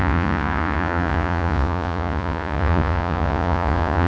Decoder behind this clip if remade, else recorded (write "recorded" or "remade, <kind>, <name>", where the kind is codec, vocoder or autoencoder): remade, vocoder, Vocos